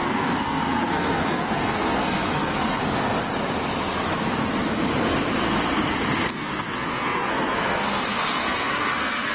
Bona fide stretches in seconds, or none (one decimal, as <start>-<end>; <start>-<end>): 2.8-6.3